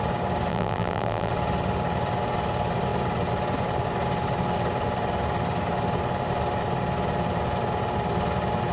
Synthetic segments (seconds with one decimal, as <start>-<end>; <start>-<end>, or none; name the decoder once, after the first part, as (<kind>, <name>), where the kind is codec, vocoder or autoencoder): 0.5-1.3 (vocoder, BigVGAN v2)